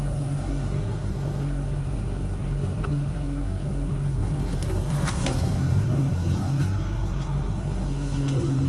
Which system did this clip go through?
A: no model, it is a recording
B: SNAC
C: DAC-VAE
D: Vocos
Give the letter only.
B